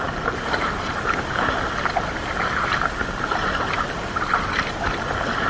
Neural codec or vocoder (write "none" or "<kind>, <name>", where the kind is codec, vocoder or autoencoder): none